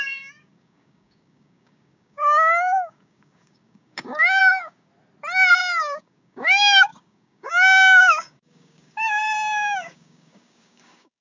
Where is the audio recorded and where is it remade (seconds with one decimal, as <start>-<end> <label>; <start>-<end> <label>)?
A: 0.0-4.9 remade; 4.9-5.5 recorded; 5.5-11.2 remade

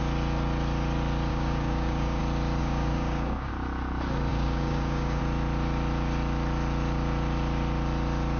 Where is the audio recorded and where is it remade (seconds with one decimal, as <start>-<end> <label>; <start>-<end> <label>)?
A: 0.0-1.3 recorded; 1.3-2.2 remade; 2.2-2.6 recorded; 2.6-3.5 remade; 3.5-4.3 recorded; 4.3-5.2 remade; 5.2-8.4 recorded

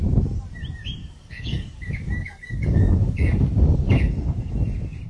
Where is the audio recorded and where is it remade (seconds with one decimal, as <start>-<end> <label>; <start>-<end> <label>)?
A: 0.0-1.0 recorded; 1.0-4.1 remade; 4.1-5.1 recorded

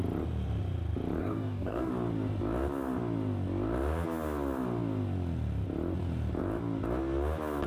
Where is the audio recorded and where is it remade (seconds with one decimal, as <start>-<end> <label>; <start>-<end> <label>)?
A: 0.0-1.2 recorded; 1.2-1.9 remade; 1.9-7.7 recorded

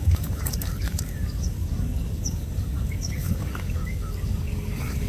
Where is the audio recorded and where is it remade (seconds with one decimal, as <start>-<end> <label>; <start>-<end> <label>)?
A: 0.0-5.1 remade

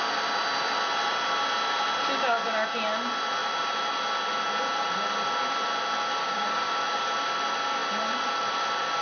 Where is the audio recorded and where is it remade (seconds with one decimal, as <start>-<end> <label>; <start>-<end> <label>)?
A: 0.0-6.2 recorded; 6.2-6.7 remade; 6.7-9.0 recorded

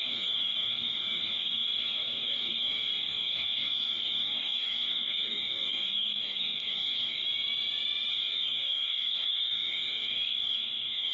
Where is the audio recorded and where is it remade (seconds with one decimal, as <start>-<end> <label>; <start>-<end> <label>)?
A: 0.0-7.2 remade; 7.2-8.1 recorded; 8.1-11.1 remade